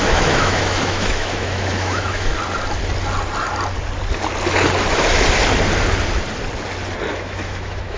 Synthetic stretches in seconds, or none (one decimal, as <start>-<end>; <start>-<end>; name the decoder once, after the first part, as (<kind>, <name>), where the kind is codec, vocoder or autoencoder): 0.0-2.3 (autoencoder, DAC-VAE); 7.1-8.0